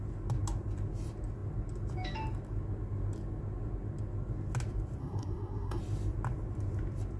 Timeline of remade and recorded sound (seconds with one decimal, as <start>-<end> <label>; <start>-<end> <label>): 0.0-5.0 recorded; 5.0-5.8 remade; 5.8-7.2 recorded